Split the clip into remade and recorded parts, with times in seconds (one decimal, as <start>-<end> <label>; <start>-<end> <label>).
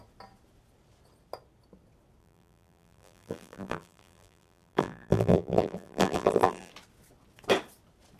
0.0-2.2 recorded; 2.2-6.7 remade; 6.7-8.2 recorded